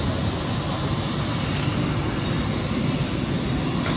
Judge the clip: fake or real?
real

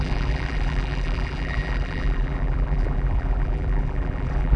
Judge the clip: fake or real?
fake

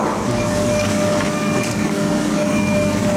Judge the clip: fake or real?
fake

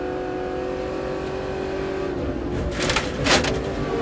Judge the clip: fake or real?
real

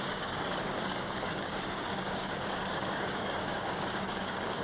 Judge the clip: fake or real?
fake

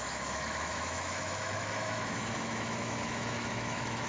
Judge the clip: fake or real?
fake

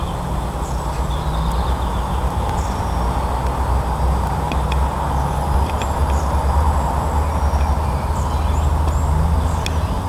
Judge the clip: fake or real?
real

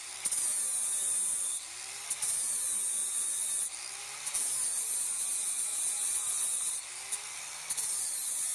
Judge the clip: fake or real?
fake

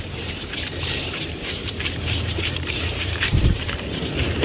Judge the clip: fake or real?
fake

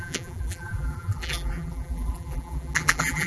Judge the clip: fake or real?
fake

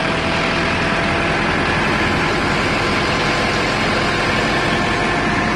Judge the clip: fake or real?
real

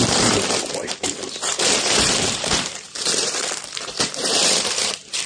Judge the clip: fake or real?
fake